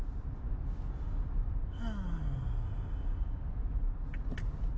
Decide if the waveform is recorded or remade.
recorded